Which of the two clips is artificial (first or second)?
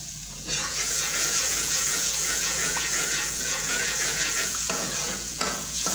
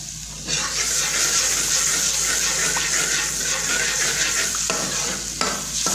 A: first